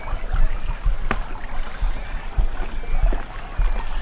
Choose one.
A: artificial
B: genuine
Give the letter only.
B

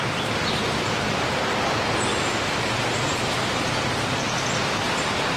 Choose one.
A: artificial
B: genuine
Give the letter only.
B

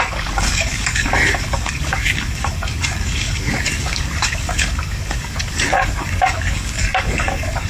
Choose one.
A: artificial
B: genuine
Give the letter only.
A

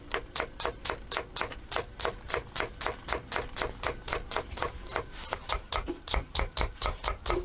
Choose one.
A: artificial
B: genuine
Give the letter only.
B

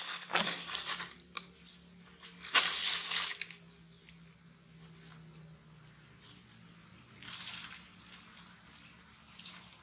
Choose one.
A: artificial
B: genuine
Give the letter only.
B